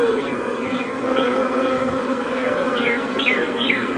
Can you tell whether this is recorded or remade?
remade